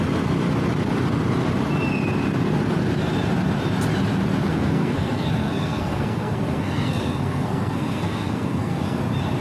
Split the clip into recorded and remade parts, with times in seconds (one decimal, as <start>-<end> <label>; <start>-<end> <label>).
0.0-4.5 recorded; 4.5-9.0 remade; 9.0-9.4 recorded